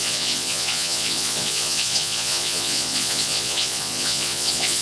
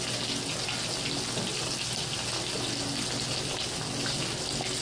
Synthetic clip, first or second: first